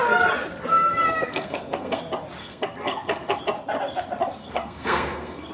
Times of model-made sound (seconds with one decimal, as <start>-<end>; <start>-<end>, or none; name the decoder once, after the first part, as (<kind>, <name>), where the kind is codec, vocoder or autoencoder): 0.7-2.0 (codec, SNAC); 2.4-3.4; 4.4-5.5